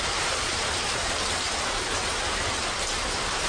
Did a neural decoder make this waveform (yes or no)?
yes